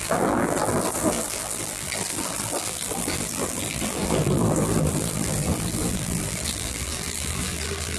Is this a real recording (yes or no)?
no